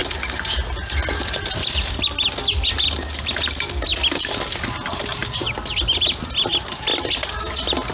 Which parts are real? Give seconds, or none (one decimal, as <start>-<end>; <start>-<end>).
0.0-7.9